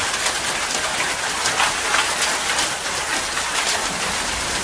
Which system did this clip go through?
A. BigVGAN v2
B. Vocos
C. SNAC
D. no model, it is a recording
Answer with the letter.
D